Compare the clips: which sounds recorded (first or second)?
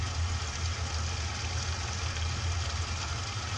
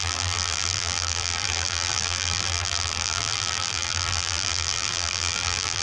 first